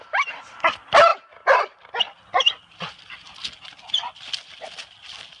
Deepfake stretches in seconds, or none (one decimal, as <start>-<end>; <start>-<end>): none